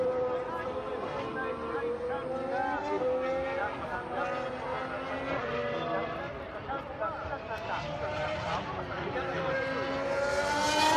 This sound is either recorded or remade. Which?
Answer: recorded